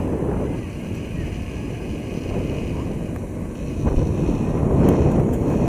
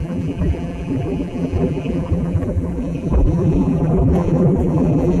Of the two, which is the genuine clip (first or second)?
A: first